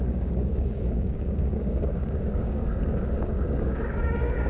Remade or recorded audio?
remade